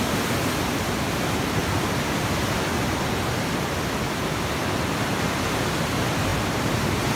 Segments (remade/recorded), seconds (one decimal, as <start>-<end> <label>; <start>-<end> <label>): 0.0-1.6 remade; 1.6-4.5 recorded; 4.5-7.2 remade